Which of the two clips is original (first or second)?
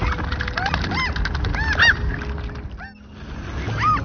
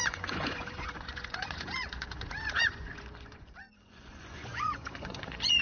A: first